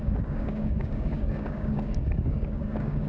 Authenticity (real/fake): fake